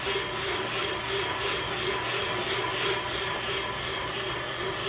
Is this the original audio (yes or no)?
yes